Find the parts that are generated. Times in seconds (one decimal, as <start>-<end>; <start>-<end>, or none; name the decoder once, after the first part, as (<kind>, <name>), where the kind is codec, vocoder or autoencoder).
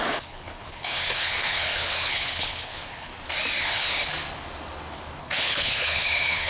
0.0-3.1 (codec, HILCodec); 3.6-4.1; 5.2-6.5